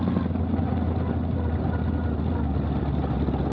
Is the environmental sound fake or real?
real